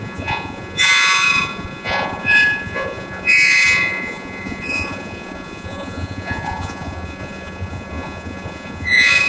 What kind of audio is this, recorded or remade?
remade